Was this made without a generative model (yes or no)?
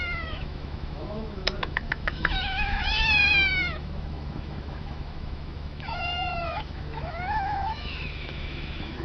no